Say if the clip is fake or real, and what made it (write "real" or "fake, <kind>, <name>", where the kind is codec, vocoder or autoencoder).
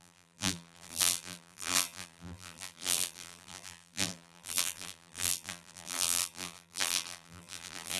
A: fake, vocoder, BigVGAN v2